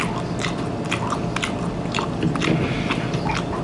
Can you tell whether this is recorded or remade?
recorded